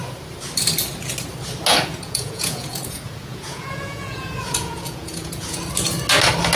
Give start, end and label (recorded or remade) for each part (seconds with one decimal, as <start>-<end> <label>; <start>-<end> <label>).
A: 0.0-1.7 recorded; 1.7-5.6 remade; 5.6-6.6 recorded